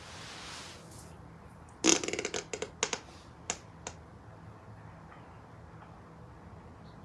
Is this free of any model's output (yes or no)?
yes